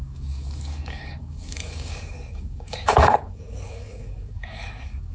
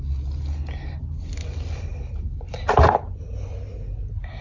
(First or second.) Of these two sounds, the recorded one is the second